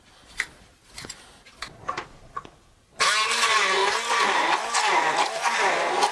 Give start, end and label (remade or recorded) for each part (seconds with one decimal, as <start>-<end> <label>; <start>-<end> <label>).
0.0-6.1 recorded